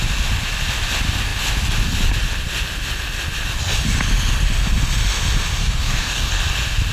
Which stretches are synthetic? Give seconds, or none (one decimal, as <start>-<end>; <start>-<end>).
5.6-6.3